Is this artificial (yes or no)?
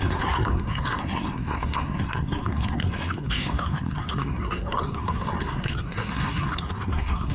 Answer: yes